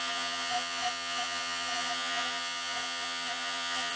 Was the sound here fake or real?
fake